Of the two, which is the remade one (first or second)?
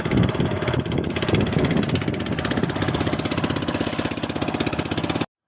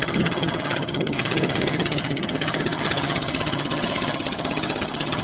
second